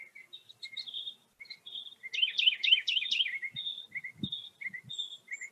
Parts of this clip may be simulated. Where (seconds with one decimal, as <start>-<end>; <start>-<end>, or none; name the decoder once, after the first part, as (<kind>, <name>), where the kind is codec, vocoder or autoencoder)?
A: 2.6-3.1 (autoencoder, DAC-VAE)